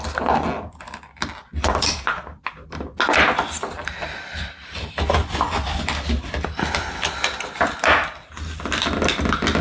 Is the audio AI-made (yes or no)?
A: no